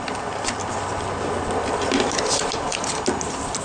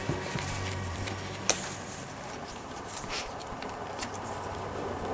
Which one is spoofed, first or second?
second